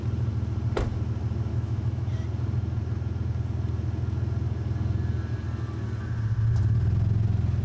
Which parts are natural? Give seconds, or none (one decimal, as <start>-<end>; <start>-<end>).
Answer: 0.0-1.5; 2.1-7.6